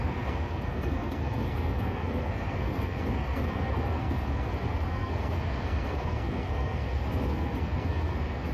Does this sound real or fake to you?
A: fake